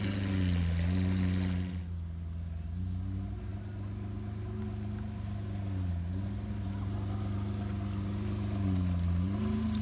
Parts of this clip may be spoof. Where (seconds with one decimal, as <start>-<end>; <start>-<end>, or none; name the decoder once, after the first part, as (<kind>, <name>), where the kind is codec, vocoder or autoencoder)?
none